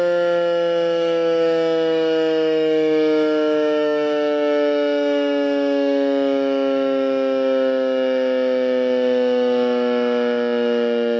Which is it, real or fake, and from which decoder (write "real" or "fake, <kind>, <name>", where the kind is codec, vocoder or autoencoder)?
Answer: fake, autoencoder, DAC-VAE